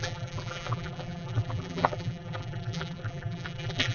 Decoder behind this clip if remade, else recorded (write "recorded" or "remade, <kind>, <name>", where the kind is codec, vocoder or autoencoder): remade, vocoder, BigVGAN v2